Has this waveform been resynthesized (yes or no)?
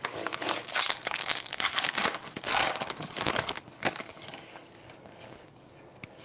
yes